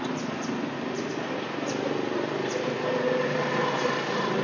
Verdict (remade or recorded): recorded